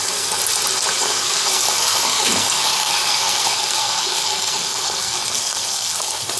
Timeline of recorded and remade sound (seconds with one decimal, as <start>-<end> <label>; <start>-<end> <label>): 0.0-0.4 remade; 0.4-1.0 recorded; 1.0-6.4 remade